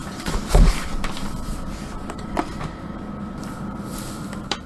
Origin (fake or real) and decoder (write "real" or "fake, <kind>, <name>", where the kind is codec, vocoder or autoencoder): fake, vocoder, BigVGAN v2